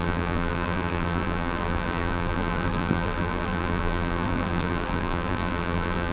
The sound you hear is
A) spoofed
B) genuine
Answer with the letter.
A